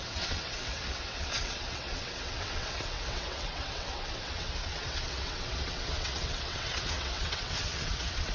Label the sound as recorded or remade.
remade